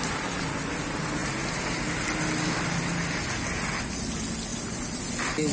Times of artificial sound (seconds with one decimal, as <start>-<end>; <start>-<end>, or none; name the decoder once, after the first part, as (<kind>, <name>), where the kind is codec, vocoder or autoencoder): 4.5-5.1 (vocoder, BigVGAN v2)